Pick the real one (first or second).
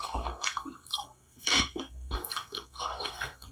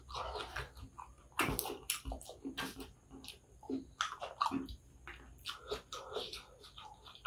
second